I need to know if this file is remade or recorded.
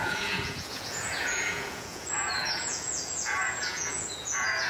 remade